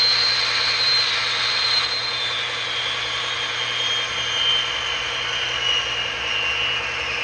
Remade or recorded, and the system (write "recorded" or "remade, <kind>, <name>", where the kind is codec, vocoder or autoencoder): recorded